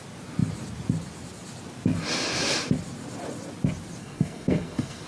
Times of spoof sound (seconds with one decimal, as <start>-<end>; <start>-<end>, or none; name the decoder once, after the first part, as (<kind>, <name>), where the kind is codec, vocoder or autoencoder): 4.0-5.1 (codec, SNAC)